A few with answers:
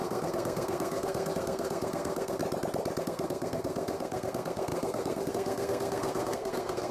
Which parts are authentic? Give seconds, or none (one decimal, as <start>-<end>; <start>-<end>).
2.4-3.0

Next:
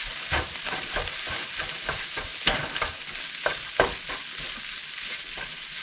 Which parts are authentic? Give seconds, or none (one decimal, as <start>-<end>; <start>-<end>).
2.3-4.9

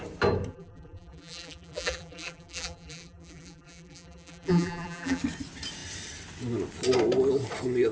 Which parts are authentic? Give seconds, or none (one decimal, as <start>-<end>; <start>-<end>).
0.0-0.5; 5.2-7.9